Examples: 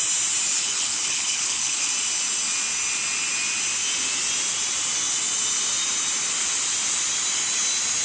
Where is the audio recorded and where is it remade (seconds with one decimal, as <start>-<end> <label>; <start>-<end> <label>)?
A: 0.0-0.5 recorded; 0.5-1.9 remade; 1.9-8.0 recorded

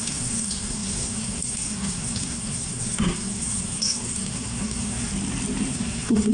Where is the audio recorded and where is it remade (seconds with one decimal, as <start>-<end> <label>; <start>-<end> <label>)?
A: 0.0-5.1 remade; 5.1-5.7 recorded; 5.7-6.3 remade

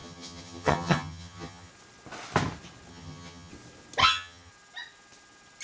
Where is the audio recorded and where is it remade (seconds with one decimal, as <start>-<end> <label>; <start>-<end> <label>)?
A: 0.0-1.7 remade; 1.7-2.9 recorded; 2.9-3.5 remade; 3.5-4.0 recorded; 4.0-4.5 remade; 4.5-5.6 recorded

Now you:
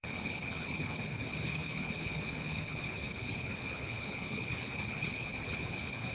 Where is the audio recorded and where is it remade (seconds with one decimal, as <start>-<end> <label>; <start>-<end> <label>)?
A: 0.0-6.1 remade

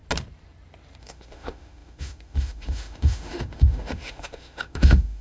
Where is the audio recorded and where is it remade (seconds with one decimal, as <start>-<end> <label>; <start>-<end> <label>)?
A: 0.0-1.0 recorded; 1.0-5.2 remade

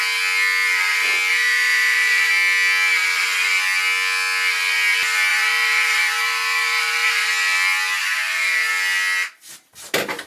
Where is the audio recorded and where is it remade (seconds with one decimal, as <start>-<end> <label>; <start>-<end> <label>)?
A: 0.0-1.3 recorded; 1.3-2.3 remade; 2.3-5.3 recorded; 5.3-7.3 remade; 7.3-8.0 recorded; 8.0-8.7 remade; 8.7-10.3 recorded